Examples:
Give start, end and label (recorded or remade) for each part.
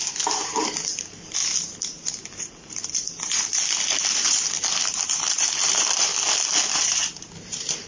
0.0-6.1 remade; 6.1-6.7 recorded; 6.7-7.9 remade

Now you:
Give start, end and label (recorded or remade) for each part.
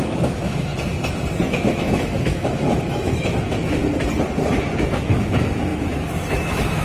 0.0-0.7 remade; 0.7-1.5 recorded; 1.5-3.8 remade; 3.8-4.8 recorded; 4.8-6.8 remade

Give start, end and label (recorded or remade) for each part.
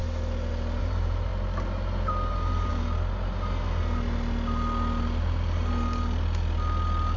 0.0-0.8 recorded; 0.8-1.3 remade; 1.3-2.3 recorded; 2.3-2.7 remade; 2.7-7.2 recorded